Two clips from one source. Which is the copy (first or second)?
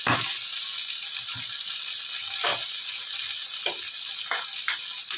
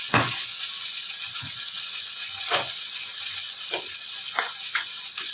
second